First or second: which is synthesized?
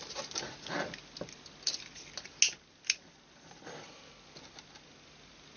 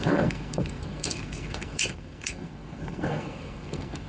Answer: second